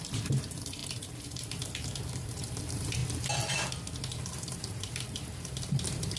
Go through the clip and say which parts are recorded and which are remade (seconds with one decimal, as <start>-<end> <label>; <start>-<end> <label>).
0.0-3.0 remade; 3.0-4.0 recorded; 4.0-6.2 remade